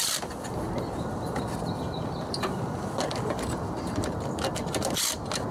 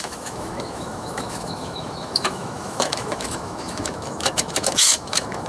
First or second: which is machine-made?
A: second